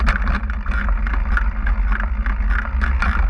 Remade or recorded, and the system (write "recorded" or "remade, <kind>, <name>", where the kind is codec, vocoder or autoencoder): recorded